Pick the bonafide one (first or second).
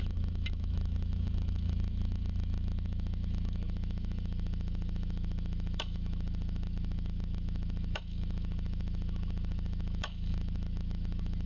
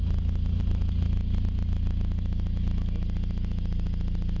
second